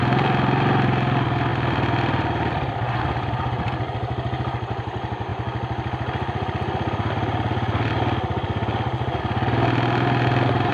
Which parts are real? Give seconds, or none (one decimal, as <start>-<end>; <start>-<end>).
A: 0.0-1.5; 3.3-10.7